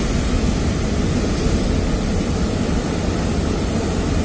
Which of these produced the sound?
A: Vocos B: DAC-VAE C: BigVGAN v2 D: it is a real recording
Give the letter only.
D